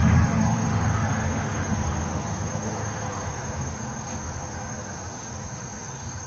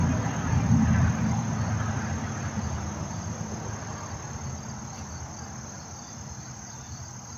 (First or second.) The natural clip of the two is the second